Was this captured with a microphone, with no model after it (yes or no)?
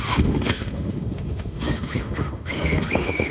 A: no